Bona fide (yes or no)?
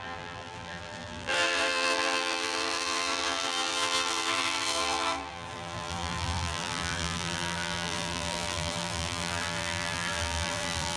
no